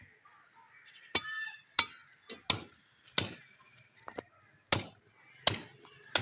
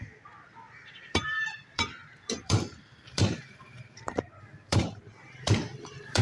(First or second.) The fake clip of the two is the second